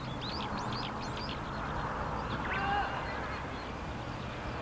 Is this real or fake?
real